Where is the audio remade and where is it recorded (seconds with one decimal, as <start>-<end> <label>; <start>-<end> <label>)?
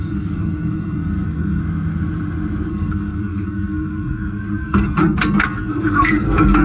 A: 0.0-1.6 remade; 1.6-2.7 recorded; 2.7-6.6 remade